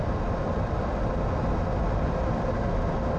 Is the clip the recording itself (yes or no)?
yes